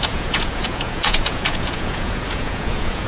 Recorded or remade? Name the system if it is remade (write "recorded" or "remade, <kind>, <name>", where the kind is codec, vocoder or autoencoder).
remade, vocoder, Vocos